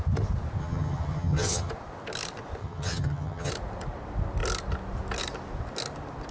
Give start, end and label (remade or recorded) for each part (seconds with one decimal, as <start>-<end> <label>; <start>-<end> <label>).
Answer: 0.0-0.6 recorded; 0.6-1.7 remade; 1.7-2.6 recorded; 2.6-3.5 remade; 3.5-6.3 recorded